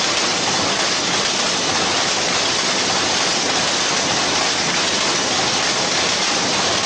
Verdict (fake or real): real